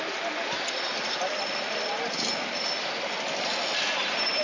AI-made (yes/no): no